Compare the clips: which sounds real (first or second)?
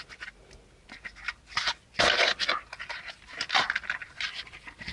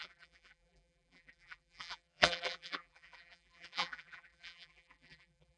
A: first